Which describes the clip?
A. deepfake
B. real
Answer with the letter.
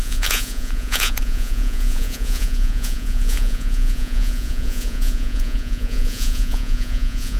A